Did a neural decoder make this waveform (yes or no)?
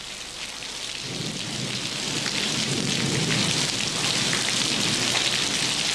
no